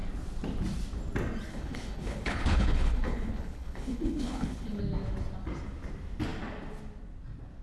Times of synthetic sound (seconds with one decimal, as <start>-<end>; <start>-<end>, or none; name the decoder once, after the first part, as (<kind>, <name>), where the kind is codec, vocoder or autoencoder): 1.5-4.8 (codec, HILCodec)